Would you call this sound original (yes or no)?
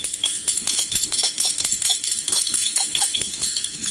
no